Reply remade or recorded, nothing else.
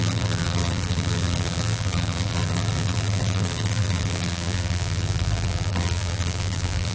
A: remade